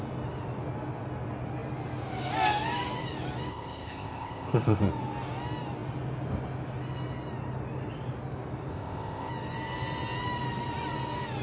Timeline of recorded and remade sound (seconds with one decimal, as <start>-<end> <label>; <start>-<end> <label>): 0.0-3.5 recorded; 3.5-4.8 remade; 4.8-8.7 recorded; 8.7-9.3 remade; 9.3-11.4 recorded